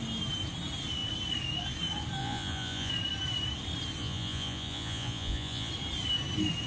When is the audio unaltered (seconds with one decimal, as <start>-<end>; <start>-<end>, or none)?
0.0-2.2; 2.9-4.0; 5.7-6.7